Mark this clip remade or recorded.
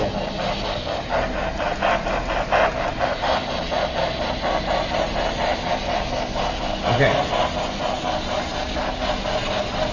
recorded